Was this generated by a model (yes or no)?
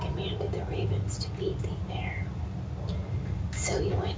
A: no